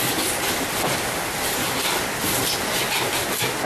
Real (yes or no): yes